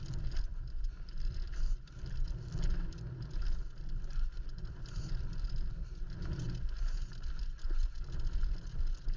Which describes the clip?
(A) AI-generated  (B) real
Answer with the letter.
B